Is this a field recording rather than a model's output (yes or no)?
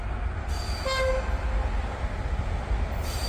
yes